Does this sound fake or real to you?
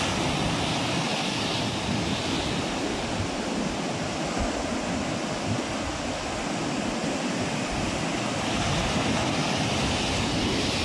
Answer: real